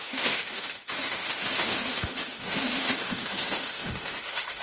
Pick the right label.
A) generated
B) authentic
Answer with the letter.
A